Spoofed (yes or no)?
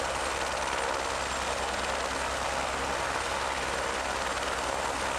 no